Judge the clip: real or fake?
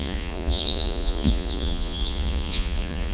fake